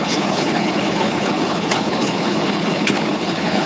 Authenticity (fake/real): fake